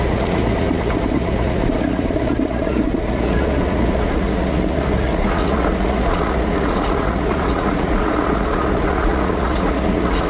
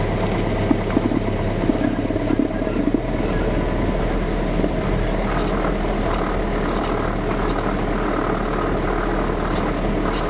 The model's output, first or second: first